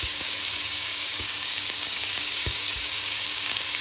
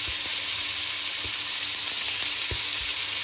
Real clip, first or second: second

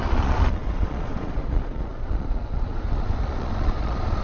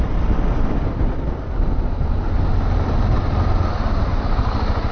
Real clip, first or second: second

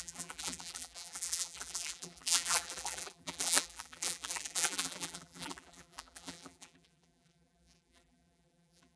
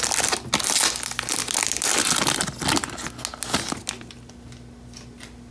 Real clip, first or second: second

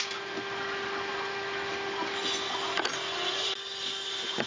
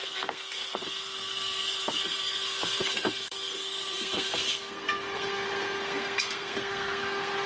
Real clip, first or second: first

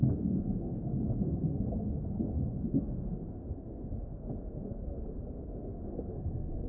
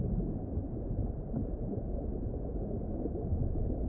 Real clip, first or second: second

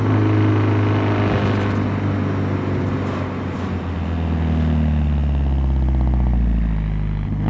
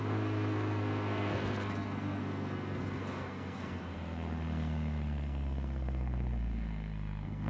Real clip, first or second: first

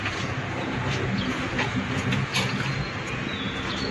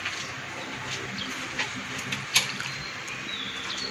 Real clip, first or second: second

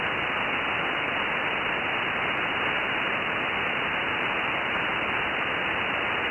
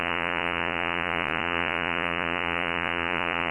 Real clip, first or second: first